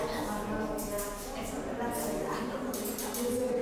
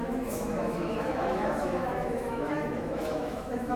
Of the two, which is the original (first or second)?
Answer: first